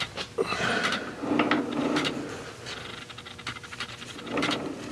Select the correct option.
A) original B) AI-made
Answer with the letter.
A